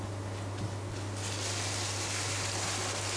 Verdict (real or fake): real